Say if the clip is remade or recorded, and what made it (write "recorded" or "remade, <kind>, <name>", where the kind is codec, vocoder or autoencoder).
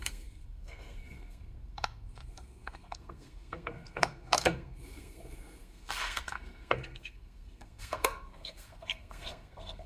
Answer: remade, codec, SNAC